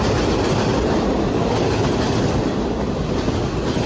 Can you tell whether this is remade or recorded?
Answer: recorded